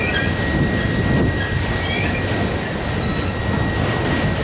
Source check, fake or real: real